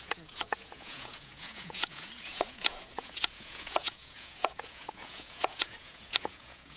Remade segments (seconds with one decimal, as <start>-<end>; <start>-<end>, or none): 0.0-6.8

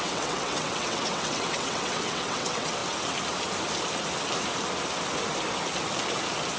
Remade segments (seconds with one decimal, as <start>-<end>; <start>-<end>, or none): 0.0-2.8

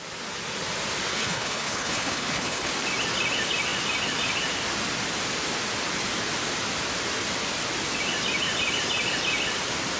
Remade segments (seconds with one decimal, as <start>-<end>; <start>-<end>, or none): 1.1-2.7

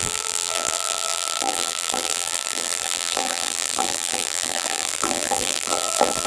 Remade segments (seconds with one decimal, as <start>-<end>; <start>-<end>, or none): 0.0-6.3

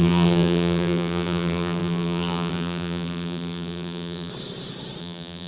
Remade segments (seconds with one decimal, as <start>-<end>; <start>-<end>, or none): 0.0-4.3; 5.0-5.5

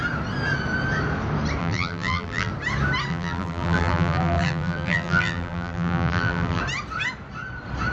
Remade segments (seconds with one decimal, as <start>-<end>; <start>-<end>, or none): 1.6-2.5; 3.1-6.6

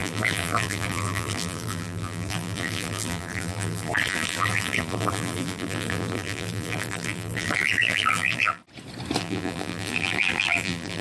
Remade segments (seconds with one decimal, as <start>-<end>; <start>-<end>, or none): 0.0-8.6; 9.2-11.0

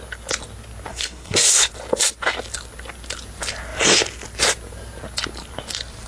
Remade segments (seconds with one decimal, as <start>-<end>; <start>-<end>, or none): 0.9-1.7